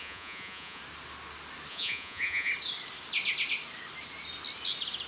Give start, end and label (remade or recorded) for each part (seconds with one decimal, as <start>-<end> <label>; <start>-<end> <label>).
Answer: 0.0-0.8 remade; 0.8-1.7 recorded; 1.7-2.5 remade; 2.5-5.1 recorded